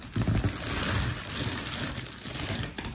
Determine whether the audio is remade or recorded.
recorded